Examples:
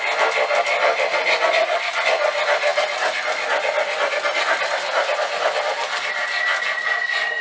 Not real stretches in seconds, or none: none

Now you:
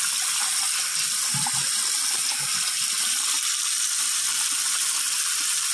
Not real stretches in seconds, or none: none

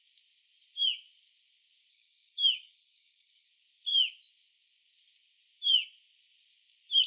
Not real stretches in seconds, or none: 1.9-3.5 (codec, DAC)

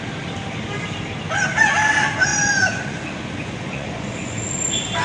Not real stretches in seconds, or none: 2.3-4.5 (vocoder, Vocos)

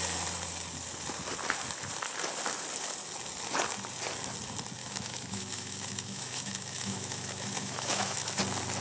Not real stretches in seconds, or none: 4.8-8.4 (autoencoder, DAC-VAE)

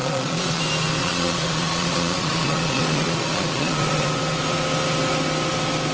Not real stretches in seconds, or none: 0.0-0.6 (vocoder, Vocos); 1.0-4.1

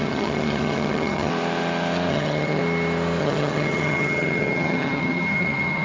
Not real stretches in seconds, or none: 0.0-1.3 (vocoder, HiFi-GAN); 2.1-2.6; 3.2-5.8

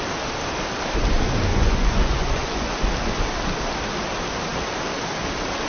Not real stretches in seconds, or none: 1.5-2.8 (vocoder, Vocos)